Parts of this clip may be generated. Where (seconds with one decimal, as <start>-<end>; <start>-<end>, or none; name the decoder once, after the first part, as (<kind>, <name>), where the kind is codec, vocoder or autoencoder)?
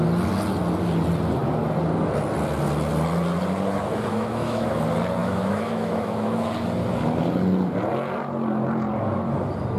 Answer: 4.1-4.7 (autoencoder, DAC-VAE); 5.2-6.5